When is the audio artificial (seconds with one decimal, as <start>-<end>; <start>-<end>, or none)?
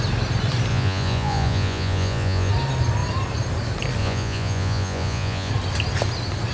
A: 0.7-2.5; 4.0-5.5